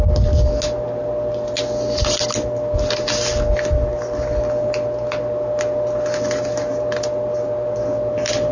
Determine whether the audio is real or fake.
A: real